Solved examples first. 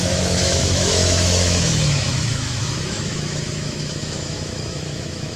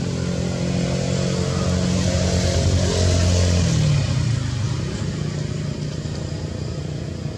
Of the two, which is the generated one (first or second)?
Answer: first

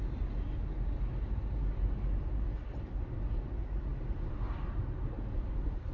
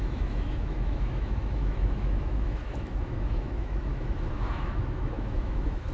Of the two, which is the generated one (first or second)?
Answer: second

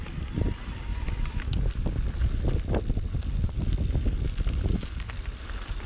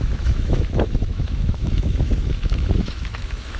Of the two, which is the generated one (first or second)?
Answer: second